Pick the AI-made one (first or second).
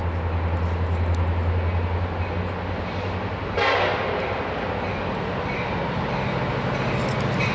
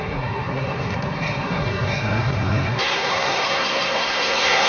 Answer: second